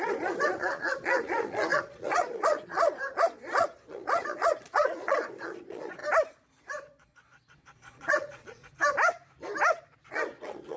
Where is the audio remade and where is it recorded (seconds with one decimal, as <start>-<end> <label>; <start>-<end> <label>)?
0.0-6.0 remade; 6.0-6.6 recorded; 6.6-8.6 remade; 8.6-10.1 recorded; 10.1-10.8 remade